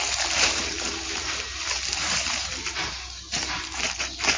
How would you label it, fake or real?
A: fake